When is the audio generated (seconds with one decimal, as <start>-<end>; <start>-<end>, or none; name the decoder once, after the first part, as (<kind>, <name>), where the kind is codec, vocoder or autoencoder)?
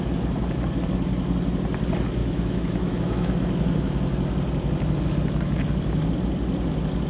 2.2-3.3 (autoencoder, DAC-VAE)